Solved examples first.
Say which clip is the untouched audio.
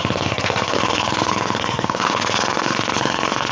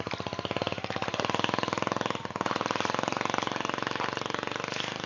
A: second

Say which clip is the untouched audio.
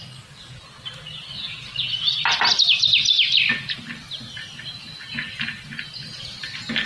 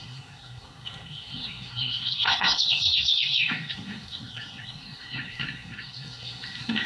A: first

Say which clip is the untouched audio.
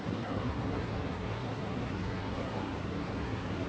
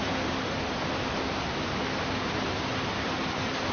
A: second